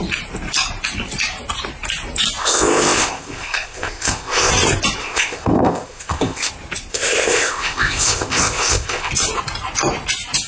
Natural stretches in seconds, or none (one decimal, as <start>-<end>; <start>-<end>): 0.0-2.4; 4.5-5.0; 6.5-6.9; 9.1-10.5